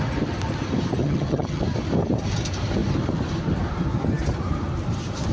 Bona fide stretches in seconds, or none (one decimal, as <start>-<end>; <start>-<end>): 0.0-1.0; 1.6-5.3